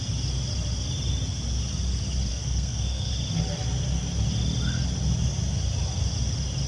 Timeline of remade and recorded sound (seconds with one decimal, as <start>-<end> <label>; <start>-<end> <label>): 0.0-2.3 recorded; 2.3-3.1 remade; 3.1-6.7 recorded